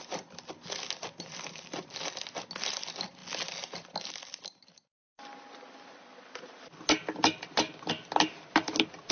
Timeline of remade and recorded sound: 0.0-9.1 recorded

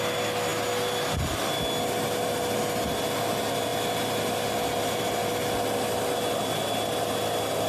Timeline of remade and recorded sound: 0.0-7.7 recorded

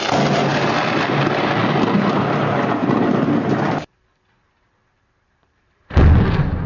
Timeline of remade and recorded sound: 0.0-2.8 recorded; 2.8-3.6 remade; 3.6-5.4 recorded; 5.4-6.0 remade; 6.0-6.7 recorded

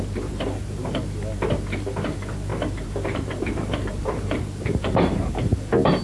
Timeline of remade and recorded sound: 0.0-2.5 recorded; 2.5-4.2 remade; 4.2-6.0 recorded

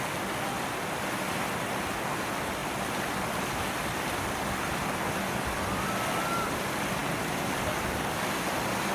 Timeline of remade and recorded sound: 0.0-8.9 recorded

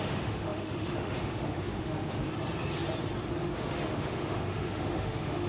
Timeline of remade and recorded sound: 0.0-2.3 remade; 2.3-3.4 recorded; 3.4-5.5 remade